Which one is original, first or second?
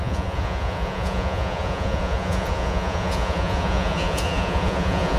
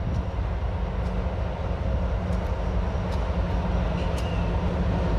second